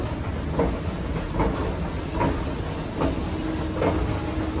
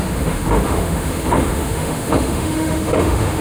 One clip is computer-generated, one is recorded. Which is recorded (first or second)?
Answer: first